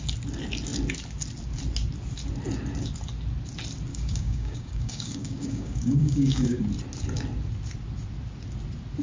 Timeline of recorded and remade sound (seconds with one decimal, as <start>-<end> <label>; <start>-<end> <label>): 0.0-3.9 recorded; 3.9-6.6 remade; 6.6-9.0 recorded